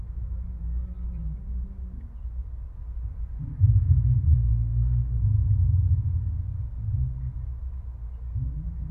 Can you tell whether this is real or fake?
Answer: real